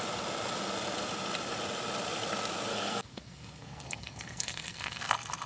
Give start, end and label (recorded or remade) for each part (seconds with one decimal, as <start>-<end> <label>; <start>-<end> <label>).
0.0-2.7 recorded; 2.7-5.1 remade; 5.1-5.5 recorded